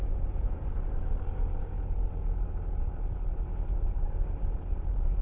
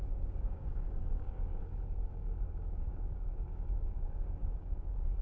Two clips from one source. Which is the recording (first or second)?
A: first